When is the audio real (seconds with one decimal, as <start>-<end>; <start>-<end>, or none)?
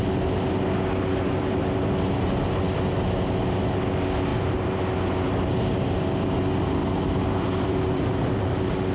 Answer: 0.0-4.3; 4.9-6.8; 8.4-8.9